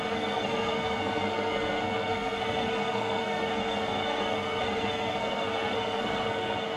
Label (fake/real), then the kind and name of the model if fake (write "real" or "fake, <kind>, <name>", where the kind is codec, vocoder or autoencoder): fake, codec, SNAC